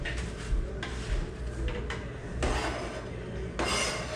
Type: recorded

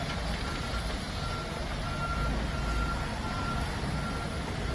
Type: recorded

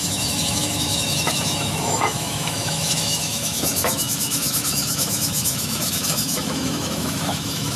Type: remade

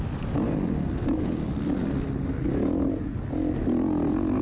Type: recorded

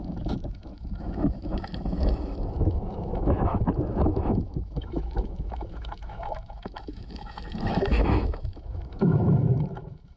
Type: remade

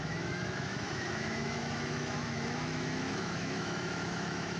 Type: remade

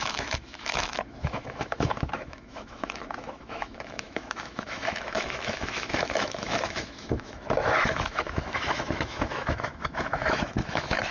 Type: remade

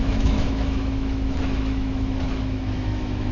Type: remade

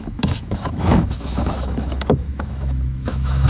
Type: remade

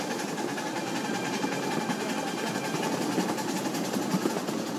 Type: recorded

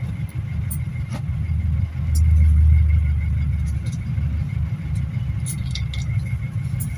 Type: recorded